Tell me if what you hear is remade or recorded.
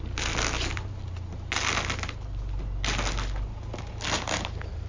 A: recorded